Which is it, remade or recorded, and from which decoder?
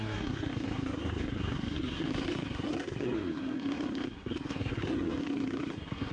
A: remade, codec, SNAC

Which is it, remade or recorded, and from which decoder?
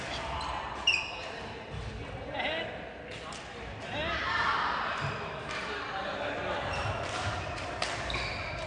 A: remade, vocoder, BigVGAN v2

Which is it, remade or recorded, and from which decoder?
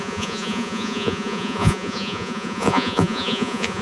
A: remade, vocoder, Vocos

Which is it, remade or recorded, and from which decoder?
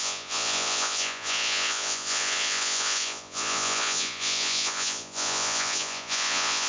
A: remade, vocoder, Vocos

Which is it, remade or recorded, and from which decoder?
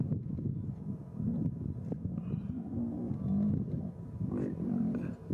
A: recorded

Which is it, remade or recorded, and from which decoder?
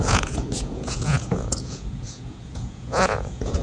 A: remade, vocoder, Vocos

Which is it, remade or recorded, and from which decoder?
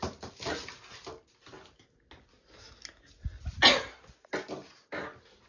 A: recorded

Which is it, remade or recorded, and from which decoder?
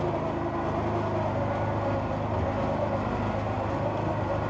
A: recorded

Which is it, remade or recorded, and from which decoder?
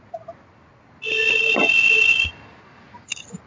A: recorded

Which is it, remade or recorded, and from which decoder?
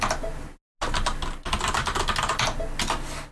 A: recorded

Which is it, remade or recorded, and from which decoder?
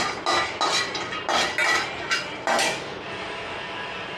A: recorded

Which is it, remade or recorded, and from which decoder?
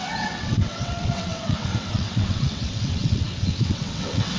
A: remade, vocoder, WaveNeXt